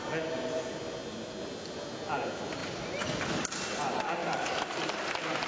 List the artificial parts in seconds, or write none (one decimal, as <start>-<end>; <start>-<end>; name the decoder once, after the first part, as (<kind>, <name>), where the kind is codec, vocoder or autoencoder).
4.2-5.0 (vocoder, BigVGAN v2)